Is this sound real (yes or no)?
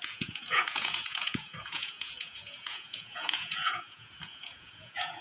no